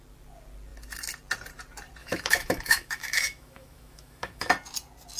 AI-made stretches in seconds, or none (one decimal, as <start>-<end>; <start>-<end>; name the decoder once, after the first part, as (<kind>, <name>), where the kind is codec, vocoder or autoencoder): 2.0-4.5 (autoencoder, DAC-VAE)